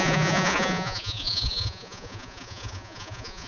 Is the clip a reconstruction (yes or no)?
yes